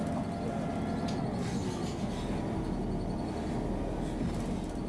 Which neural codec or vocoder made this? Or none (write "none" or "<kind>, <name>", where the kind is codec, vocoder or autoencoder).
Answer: none